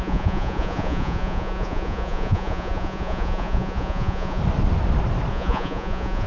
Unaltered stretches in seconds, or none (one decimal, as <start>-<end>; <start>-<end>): 4.4-5.3